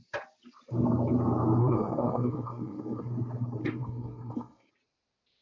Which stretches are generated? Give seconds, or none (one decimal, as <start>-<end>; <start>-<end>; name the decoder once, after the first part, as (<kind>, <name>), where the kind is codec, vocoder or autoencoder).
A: 1.6-3.1 (codec, SNAC); 3.6-4.7